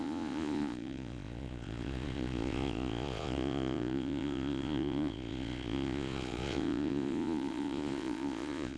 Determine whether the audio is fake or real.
fake